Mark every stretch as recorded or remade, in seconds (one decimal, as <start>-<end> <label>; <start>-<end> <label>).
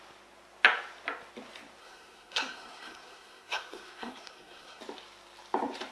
0.0-1.8 recorded; 1.8-4.8 remade; 4.8-5.9 recorded